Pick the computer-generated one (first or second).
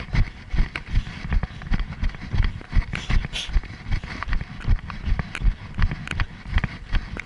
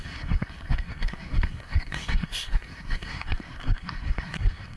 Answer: second